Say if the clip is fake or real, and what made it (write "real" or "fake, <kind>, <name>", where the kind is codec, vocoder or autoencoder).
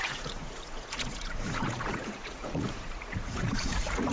fake, vocoder, Vocos